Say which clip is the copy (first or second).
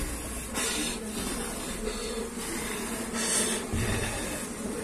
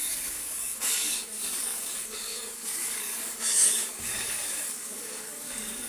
second